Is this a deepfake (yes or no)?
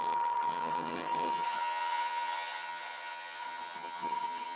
yes